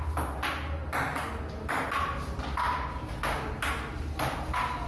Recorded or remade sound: recorded